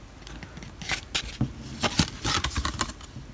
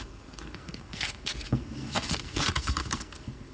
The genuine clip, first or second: first